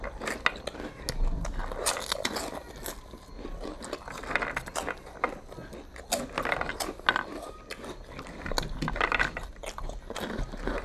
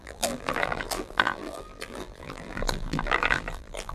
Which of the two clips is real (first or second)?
first